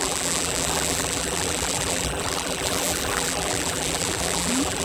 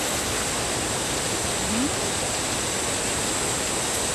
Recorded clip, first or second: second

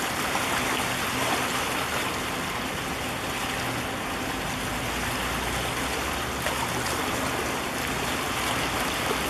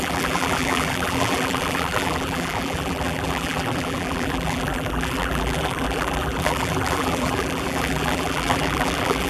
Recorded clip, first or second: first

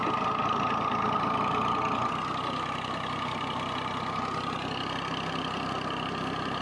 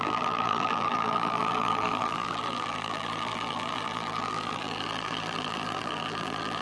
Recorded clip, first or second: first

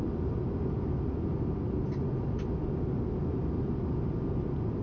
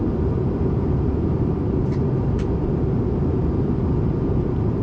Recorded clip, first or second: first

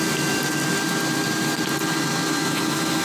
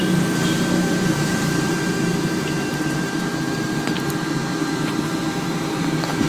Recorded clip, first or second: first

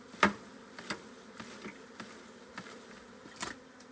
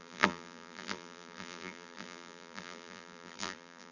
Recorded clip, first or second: first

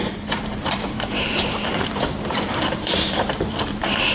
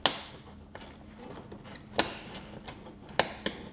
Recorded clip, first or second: second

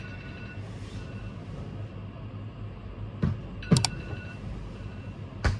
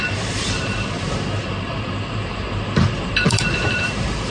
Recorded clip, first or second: first